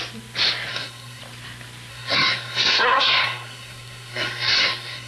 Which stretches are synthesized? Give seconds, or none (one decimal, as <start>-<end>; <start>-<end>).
0.7-1.2; 1.9-5.1